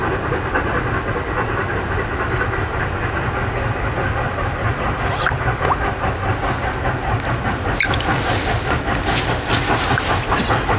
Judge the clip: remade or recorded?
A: recorded